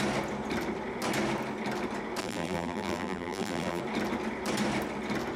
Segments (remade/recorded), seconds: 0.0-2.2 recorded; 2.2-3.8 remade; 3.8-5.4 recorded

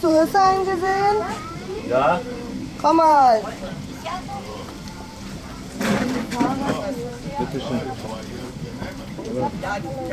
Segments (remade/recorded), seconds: 0.0-10.1 remade